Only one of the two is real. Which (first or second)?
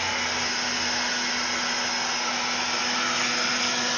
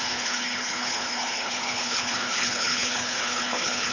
first